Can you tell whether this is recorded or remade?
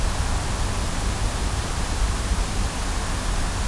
recorded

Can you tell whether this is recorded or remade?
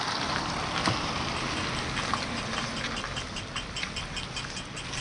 recorded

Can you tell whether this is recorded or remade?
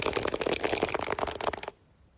recorded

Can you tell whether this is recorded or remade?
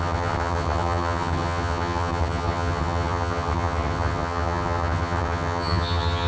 remade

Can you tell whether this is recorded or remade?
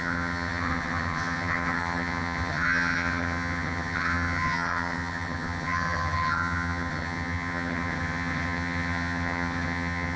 remade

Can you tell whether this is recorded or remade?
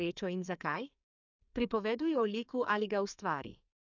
remade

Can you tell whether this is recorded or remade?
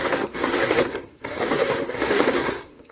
remade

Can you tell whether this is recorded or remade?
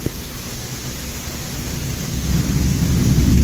recorded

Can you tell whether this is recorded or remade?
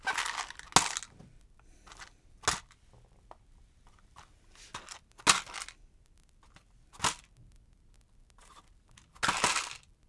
recorded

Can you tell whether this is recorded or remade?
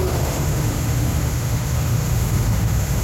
remade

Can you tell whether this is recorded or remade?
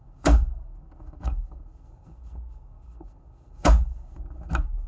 remade